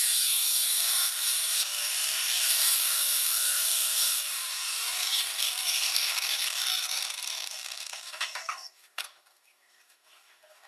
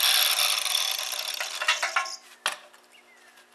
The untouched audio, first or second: second